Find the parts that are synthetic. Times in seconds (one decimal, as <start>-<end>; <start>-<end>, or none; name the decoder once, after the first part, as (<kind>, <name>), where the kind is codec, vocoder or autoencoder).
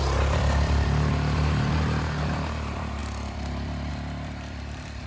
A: 0.0-5.1 (vocoder, BigVGAN v2)